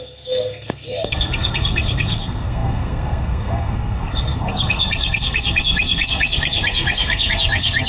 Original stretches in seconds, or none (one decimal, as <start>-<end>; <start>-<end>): none